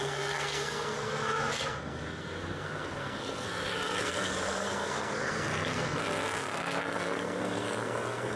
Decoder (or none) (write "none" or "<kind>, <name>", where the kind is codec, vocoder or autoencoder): codec, SNAC